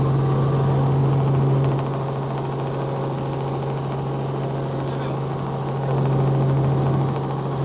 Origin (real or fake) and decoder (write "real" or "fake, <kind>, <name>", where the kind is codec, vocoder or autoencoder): real